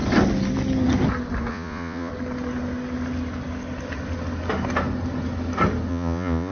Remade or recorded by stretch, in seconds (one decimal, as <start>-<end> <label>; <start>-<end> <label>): 0.0-1.5 recorded; 1.5-2.1 remade; 2.1-5.9 recorded; 5.9-6.5 remade